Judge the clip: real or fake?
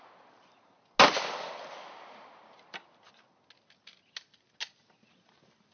real